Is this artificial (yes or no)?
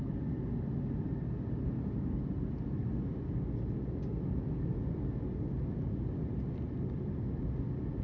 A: no